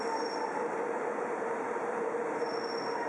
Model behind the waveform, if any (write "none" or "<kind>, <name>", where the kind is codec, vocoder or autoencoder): none